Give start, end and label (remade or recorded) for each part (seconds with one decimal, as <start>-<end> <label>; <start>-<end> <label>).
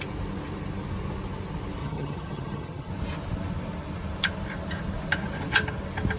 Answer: 0.0-1.8 recorded; 1.8-2.9 remade; 2.9-6.2 recorded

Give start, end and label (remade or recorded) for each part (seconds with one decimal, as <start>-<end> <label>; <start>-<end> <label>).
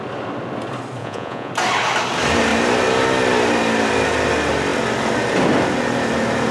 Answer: 0.0-1.0 recorded; 1.0-1.5 remade; 1.5-6.5 recorded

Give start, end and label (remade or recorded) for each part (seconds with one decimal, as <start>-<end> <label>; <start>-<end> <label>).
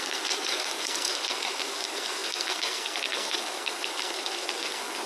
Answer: 0.0-5.1 remade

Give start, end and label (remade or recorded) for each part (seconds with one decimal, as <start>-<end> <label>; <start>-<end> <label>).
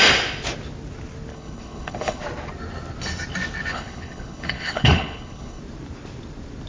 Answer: 0.0-1.3 recorded; 1.3-2.2 remade; 2.2-3.7 recorded; 3.7-5.6 remade; 5.6-6.7 recorded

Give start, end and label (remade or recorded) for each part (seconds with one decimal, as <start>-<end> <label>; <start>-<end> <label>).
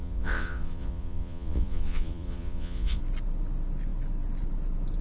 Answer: 0.0-3.0 remade; 3.0-5.0 recorded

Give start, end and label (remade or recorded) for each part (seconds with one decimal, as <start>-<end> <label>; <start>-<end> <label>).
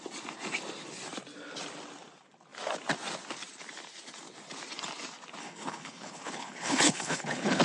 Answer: 0.0-5.4 recorded; 5.4-7.6 remade